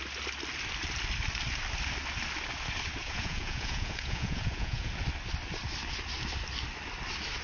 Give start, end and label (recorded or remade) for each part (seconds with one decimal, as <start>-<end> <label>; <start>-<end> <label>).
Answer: 0.0-3.0 recorded; 3.0-4.9 remade; 4.9-7.4 recorded